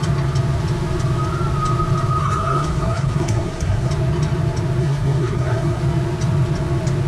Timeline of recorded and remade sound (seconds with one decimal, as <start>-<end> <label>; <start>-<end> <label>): 0.0-2.2 recorded; 2.2-3.9 remade; 3.9-4.8 recorded; 4.8-5.8 remade; 5.8-7.1 recorded